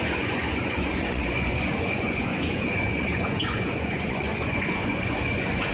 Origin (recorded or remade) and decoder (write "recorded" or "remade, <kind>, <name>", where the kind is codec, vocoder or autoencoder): remade, vocoder, Vocos